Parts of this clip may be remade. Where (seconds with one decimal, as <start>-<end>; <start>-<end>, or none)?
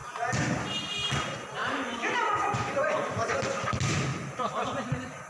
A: 1.6-3.4; 4.1-5.3